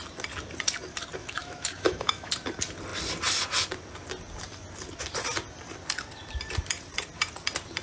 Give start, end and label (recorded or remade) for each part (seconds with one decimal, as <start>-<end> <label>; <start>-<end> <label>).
0.0-1.2 recorded; 1.2-2.3 remade; 2.3-7.8 recorded